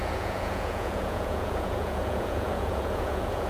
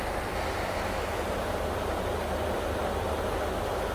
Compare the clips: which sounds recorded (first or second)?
second